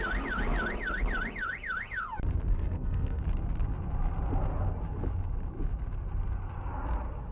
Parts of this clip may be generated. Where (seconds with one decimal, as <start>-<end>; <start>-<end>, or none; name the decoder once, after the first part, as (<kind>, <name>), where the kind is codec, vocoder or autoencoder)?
2.5-3.2 (codec, SNAC)